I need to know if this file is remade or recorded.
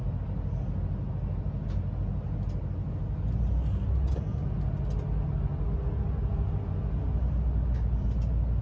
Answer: recorded